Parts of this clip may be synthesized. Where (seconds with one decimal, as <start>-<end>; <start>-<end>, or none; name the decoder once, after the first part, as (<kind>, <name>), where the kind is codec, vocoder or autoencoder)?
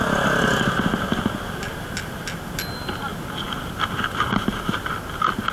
none